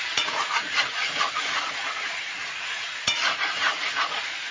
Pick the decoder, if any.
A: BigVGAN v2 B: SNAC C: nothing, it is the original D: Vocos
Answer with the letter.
D